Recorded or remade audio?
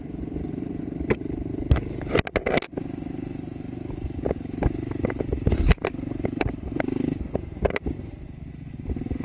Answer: recorded